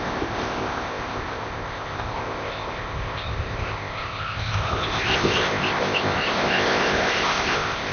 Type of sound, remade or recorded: remade